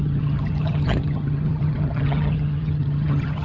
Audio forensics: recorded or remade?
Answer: remade